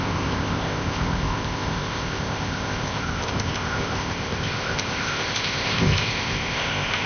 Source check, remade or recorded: remade